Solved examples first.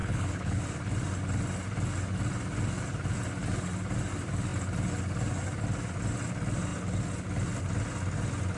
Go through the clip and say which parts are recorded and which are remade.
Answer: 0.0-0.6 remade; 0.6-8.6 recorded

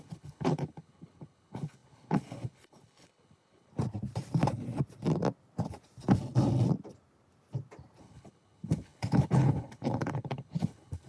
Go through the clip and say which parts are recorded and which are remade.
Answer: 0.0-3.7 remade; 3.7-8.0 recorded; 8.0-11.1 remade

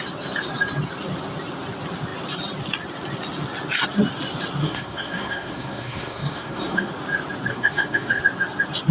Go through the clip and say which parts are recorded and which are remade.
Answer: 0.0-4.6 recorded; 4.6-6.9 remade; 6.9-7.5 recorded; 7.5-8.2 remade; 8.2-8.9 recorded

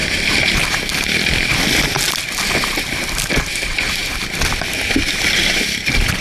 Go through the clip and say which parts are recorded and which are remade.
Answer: 0.0-1.2 recorded; 1.2-6.2 remade